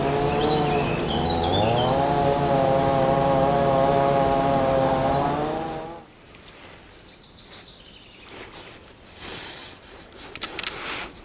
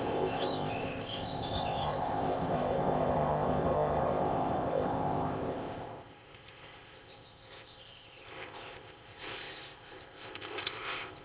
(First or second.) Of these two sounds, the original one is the first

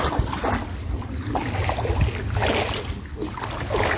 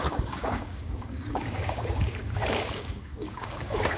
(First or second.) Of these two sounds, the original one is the first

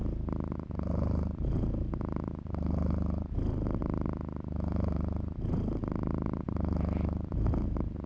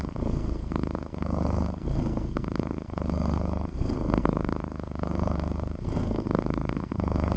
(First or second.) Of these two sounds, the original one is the first